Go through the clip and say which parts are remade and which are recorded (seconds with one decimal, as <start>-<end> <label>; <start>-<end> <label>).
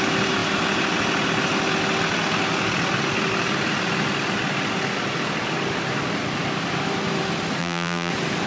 0.0-7.6 recorded; 7.6-8.1 remade; 8.1-8.5 recorded